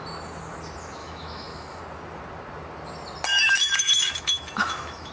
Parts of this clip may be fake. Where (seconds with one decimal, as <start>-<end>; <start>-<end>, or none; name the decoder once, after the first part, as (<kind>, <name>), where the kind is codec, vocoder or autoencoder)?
1.0-1.8 (autoencoder, DAC-VAE); 3.3-5.1